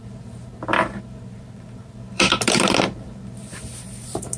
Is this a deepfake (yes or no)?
yes